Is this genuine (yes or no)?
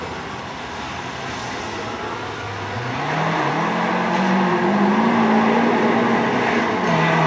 yes